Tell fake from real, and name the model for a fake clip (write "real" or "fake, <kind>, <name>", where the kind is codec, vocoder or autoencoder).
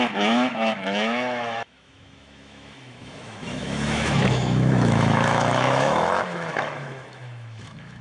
fake, autoencoder, DAC-VAE